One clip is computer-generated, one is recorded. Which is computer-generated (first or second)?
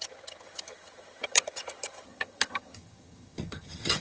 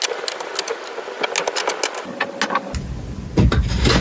first